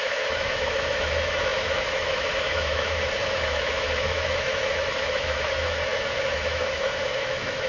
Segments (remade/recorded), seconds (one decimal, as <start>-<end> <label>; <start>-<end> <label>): 0.0-7.7 remade